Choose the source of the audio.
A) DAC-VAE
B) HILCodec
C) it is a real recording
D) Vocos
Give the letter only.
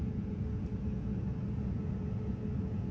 D